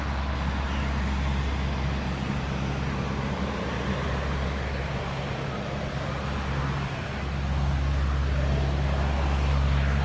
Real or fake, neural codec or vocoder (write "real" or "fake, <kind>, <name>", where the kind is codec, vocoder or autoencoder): real